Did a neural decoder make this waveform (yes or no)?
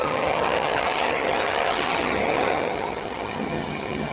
yes